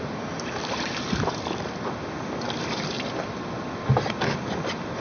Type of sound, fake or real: fake